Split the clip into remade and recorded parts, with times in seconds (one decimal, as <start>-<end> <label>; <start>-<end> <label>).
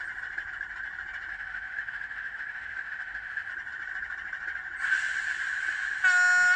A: 0.0-1.3 recorded; 1.3-3.5 remade; 3.5-6.6 recorded